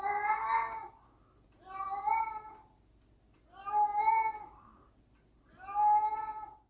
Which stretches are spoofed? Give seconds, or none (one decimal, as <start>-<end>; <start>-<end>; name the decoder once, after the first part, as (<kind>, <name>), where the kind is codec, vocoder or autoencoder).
none

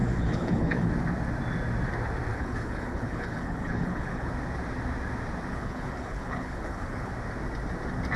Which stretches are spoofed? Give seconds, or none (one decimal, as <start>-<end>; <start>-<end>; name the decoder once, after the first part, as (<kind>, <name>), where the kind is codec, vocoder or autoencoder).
0.0-0.9 (codec, HILCodec); 2.3-4.3; 5.5-7.1

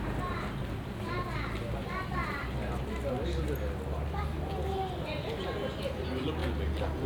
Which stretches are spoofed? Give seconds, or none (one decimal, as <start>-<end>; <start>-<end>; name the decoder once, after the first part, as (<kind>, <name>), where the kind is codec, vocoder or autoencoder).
none

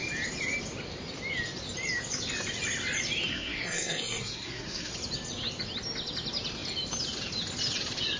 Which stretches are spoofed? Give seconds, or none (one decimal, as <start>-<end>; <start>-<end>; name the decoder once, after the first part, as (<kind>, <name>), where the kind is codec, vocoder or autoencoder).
3.3-4.9 (codec, SNAC)

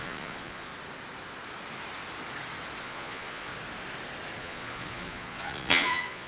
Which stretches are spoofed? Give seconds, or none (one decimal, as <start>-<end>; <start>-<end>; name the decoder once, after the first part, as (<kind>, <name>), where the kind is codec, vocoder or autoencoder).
0.0-0.7 (vocoder, Vocos); 2.8-3.5; 4.4-6.3

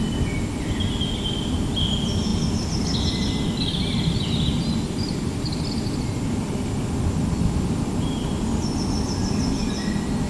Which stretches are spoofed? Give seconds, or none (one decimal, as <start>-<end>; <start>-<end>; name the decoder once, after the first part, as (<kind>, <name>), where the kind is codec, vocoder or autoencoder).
none

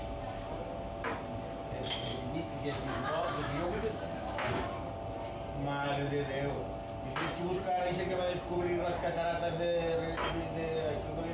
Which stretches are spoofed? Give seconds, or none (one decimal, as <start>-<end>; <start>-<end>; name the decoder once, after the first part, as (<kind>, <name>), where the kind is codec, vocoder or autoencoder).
2.1-4.5 (autoencoder, DAC-VAE)

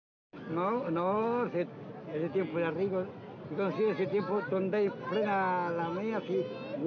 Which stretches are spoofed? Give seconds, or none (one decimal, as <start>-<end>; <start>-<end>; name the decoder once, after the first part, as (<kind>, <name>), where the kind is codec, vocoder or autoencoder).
0.0-1.9 (codec, DAC); 4.1-4.9